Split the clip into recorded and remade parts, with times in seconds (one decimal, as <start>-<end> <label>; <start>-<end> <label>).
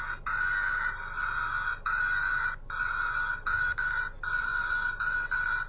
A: 0.0-5.7 recorded